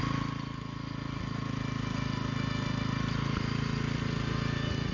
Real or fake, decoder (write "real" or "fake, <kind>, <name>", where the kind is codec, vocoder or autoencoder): real